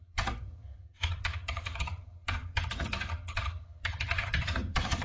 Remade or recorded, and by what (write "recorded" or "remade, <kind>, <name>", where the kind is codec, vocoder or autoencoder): remade, vocoder, HiFi-GAN